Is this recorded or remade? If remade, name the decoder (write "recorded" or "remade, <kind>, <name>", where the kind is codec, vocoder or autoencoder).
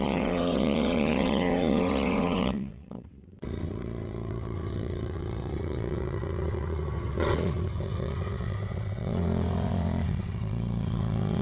remade, vocoder, WaveNeXt